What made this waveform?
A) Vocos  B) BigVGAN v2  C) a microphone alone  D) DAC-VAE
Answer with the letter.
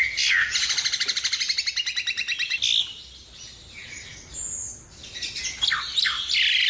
C